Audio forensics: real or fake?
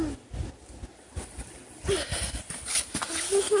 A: real